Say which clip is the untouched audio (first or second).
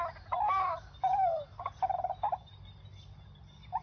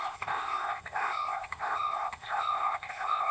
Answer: first